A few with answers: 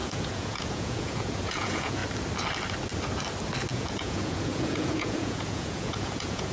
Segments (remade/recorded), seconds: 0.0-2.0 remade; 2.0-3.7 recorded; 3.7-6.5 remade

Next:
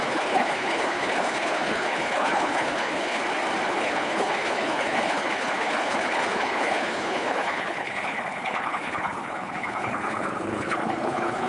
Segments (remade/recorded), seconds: 0.0-3.2 remade; 3.2-3.7 recorded; 3.7-11.5 remade

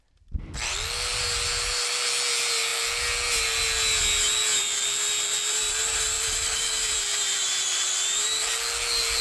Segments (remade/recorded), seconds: 0.0-4.6 recorded; 4.6-8.5 remade; 8.5-9.2 recorded

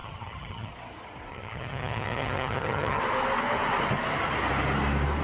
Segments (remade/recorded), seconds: 0.0-0.7 remade; 0.7-1.3 recorded; 1.3-3.0 remade; 3.0-5.2 recorded